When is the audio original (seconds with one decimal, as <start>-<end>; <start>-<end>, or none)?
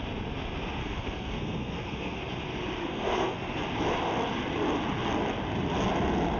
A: 0.0-0.8; 2.2-2.8; 3.6-6.4